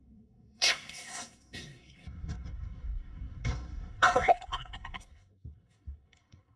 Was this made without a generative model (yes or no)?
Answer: no